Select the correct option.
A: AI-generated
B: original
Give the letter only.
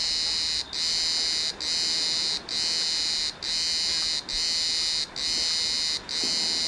B